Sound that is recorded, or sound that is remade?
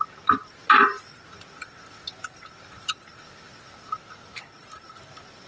recorded